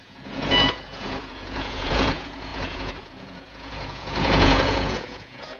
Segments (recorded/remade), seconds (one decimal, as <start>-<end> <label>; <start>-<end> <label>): 0.0-5.6 remade

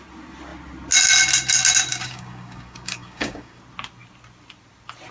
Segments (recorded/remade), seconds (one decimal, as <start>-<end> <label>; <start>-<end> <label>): 0.0-1.9 recorded; 1.9-3.6 remade; 3.6-5.1 recorded